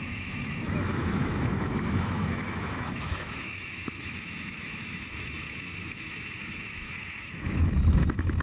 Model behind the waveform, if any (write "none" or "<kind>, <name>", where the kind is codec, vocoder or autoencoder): autoencoder, DAC-VAE